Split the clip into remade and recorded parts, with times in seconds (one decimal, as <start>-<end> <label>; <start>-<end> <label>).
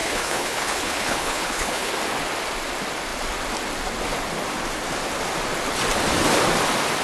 0.0-1.9 remade; 1.9-7.0 recorded